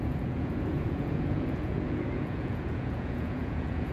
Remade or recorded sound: remade